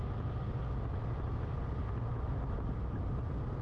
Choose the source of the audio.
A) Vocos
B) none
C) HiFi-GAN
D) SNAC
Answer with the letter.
B